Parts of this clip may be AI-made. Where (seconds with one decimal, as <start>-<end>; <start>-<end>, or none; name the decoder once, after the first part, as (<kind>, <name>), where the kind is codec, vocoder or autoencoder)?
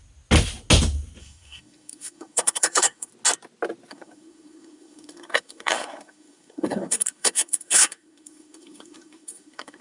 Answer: 1.2-3.1 (codec, SNAC); 3.9-9.8